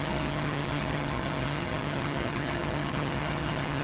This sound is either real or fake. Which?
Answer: fake